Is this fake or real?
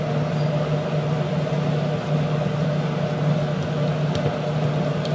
real